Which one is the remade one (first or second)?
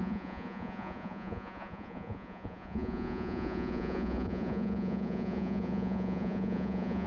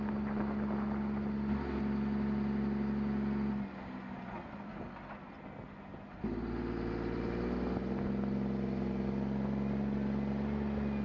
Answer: first